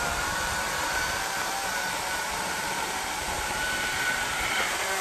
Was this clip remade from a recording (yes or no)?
yes